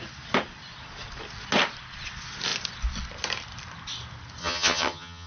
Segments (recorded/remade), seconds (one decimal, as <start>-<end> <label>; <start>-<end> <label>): 0.0-4.4 recorded; 4.4-5.3 remade